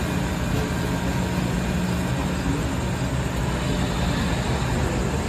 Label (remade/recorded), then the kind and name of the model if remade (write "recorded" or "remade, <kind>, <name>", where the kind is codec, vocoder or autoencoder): recorded